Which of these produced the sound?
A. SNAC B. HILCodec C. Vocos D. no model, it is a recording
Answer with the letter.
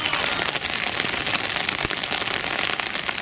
D